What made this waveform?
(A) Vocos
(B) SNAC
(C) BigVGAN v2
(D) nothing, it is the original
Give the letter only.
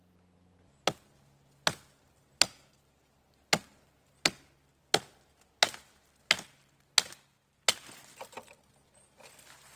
D